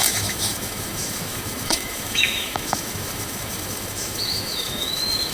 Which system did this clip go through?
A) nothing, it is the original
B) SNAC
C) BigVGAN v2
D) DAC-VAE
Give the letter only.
D